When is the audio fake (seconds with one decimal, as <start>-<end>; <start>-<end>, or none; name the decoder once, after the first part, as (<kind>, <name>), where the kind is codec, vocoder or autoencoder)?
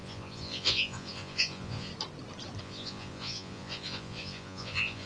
0.0-1.9 (vocoder, Vocos); 2.6-5.1